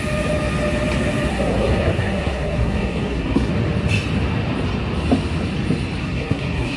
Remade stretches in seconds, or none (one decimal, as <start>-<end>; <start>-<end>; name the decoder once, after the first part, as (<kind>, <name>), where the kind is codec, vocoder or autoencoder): 1.3-3.5 (codec, SNAC); 6.0-6.8